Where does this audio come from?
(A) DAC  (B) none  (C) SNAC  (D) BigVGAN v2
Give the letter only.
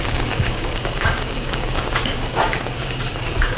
A